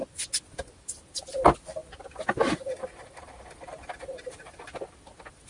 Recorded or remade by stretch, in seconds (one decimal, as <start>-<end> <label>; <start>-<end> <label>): 0.0-5.5 recorded